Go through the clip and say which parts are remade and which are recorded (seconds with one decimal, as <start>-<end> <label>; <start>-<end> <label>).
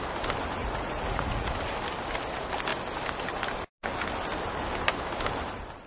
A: 0.0-0.6 recorded; 0.6-1.5 remade; 1.5-5.9 recorded